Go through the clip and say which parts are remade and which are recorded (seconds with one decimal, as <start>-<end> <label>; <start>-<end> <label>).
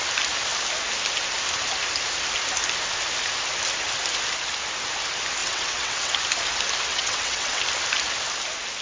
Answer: 0.0-5.4 recorded; 5.4-6.1 remade; 6.1-6.9 recorded; 6.9-7.6 remade; 7.6-8.8 recorded